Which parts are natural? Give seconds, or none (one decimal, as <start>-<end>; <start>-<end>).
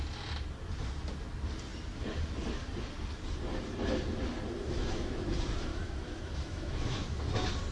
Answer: 0.0-4.6; 5.1-5.7; 7.2-7.7